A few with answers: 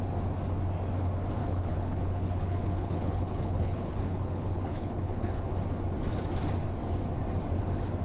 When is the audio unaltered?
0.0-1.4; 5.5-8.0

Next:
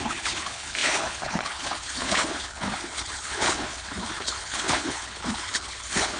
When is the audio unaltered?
none

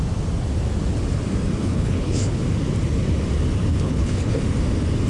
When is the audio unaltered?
0.0-1.6; 2.4-3.7; 4.3-5.1

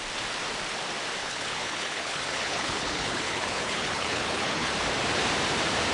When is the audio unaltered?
0.0-1.2; 4.7-5.9

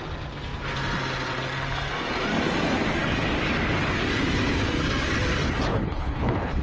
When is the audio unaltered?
0.0-5.7

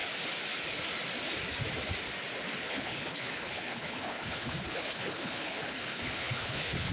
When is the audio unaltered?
0.0-2.6

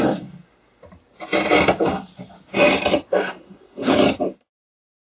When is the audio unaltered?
0.0-3.4; 4.0-5.0

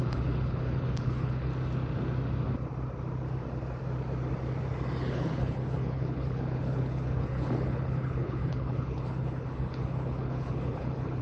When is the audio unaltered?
1.5-5.1